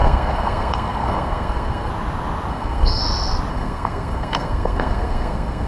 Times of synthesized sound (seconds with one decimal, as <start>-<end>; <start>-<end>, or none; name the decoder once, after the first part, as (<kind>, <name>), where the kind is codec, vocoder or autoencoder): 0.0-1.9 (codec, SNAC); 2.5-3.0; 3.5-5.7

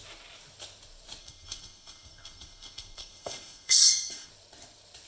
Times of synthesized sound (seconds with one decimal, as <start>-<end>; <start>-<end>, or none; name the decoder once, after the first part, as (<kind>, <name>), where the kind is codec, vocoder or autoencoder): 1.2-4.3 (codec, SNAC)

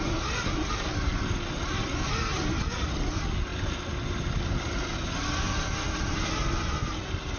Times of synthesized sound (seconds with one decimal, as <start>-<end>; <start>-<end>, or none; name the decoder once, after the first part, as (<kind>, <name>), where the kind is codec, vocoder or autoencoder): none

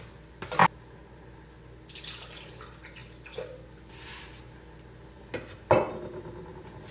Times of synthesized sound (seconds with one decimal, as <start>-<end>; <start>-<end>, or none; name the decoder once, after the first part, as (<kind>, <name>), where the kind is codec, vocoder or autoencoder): none